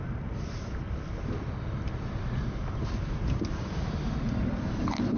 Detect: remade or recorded recorded